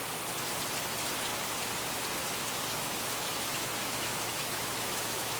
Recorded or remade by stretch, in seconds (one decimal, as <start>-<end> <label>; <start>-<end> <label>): 0.0-2.2 recorded; 2.2-5.4 remade